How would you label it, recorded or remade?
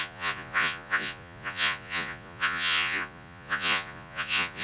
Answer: remade